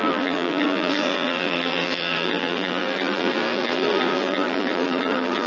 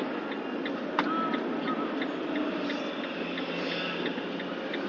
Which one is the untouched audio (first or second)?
second